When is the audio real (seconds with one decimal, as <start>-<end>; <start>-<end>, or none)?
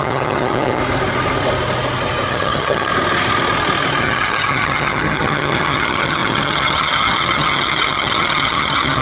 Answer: 0.8-2.3; 2.9-4.0